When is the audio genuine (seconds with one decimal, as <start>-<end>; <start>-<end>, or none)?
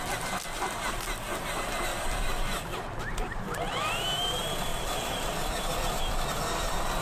0.0-4.7; 6.4-7.0